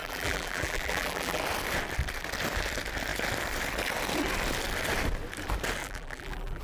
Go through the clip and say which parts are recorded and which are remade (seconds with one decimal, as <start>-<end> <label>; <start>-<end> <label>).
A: 0.0-1.4 remade; 1.4-5.8 recorded; 5.8-6.6 remade